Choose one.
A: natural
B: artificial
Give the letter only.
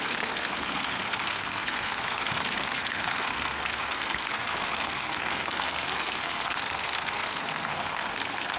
B